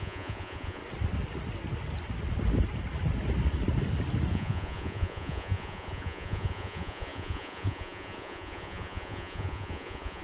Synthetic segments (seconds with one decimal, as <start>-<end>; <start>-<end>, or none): 0.0-0.8; 4.3-10.2

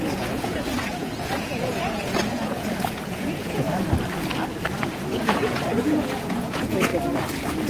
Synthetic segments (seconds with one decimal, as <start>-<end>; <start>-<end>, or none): 0.0-3.7; 4.9-6.9

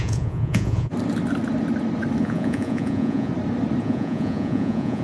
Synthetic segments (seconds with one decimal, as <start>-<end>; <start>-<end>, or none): 0.0-0.9; 2.2-3.3; 3.8-5.0

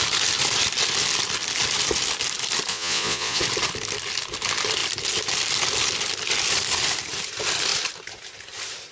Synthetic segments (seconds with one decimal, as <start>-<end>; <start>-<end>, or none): 2.7-3.4

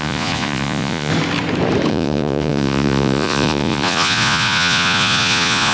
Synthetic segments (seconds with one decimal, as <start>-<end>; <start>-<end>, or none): 0.0-1.1; 1.9-5.7

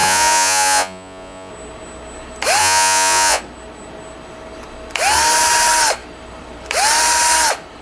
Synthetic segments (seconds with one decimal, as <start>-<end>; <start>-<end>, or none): 0.0-1.5; 2.6-3.4

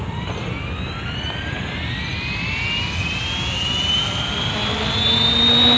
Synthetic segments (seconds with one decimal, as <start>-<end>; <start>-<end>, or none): none

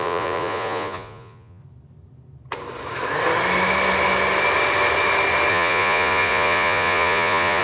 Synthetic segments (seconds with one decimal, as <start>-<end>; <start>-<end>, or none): 0.0-1.6; 5.5-7.6